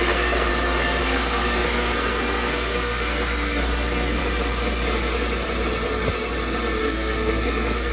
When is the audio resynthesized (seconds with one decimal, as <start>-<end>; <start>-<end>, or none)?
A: 0.0-0.5; 1.0-4.2; 6.8-7.9